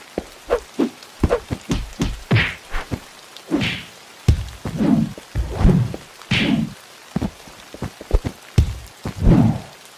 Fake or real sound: real